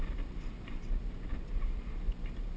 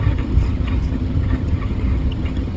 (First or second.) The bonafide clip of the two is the first